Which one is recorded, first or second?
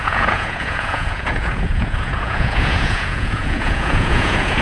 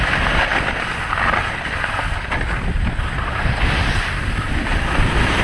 second